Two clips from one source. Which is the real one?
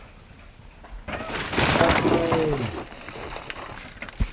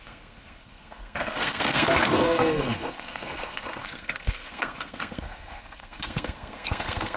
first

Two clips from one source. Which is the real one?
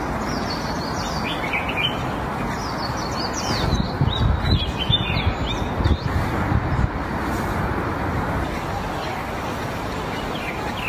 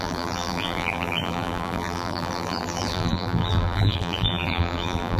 first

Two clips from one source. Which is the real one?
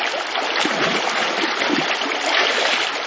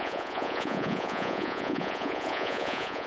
first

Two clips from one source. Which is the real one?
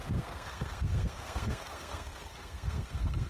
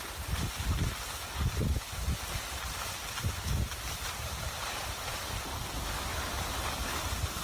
second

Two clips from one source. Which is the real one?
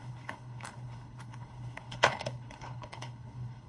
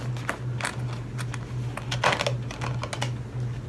second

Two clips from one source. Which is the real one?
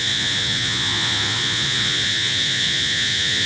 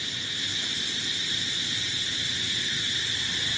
second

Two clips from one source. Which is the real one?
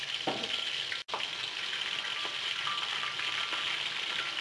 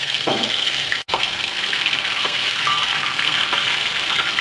first